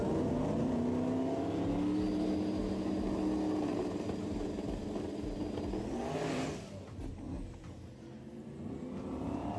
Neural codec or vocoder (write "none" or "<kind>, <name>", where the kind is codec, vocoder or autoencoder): none